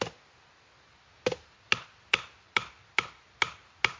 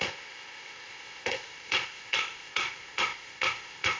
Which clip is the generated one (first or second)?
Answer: second